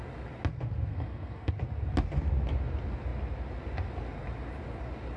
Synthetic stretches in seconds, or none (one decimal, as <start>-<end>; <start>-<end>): 0.9-1.5